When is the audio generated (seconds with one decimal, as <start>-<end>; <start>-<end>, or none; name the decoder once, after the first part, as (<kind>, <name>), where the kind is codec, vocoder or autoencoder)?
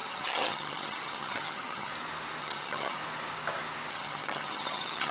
0.0-1.9 (vocoder, HiFi-GAN); 2.4-3.0; 3.9-5.1